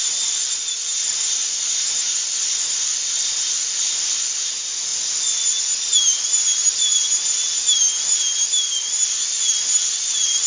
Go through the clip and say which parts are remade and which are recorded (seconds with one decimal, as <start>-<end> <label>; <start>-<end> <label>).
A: 0.0-10.5 recorded